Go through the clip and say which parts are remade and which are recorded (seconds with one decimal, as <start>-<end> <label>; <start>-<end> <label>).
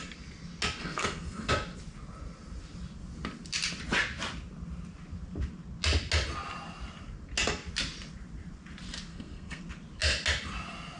0.0-0.8 recorded; 0.8-1.5 remade; 1.5-9.1 recorded; 9.1-9.6 remade; 9.6-11.0 recorded